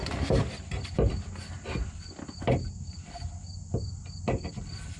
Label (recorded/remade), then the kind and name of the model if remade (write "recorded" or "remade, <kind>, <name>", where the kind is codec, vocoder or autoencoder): recorded